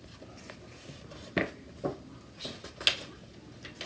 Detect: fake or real real